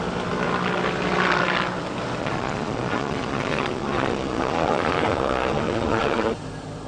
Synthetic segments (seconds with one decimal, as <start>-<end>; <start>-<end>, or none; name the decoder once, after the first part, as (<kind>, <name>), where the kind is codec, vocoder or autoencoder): 2.2-6.3 (vocoder, Vocos)